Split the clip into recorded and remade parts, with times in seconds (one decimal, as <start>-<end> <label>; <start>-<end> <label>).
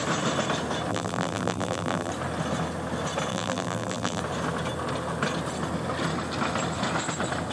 0.0-0.9 recorded; 0.9-2.1 remade; 2.1-3.3 recorded; 3.3-4.2 remade; 4.2-7.5 recorded